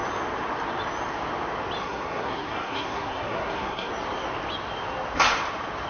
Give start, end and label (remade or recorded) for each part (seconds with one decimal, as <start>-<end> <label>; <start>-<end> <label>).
0.0-1.8 recorded; 1.8-3.9 remade; 3.9-5.9 recorded